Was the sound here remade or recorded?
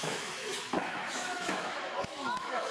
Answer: remade